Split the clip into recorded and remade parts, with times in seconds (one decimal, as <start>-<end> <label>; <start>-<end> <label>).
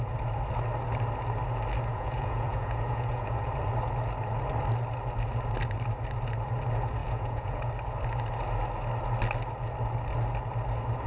0.0-1.9 recorded; 1.9-3.5 remade; 3.5-7.0 recorded; 7.0-7.7 remade; 7.7-11.1 recorded